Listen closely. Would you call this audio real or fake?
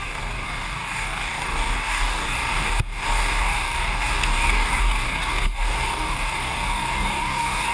fake